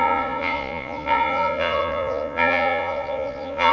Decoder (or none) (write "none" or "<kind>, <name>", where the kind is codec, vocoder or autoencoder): vocoder, Vocos